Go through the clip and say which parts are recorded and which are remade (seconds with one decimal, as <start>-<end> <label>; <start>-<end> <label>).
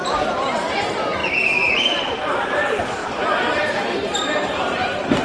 0.0-5.2 remade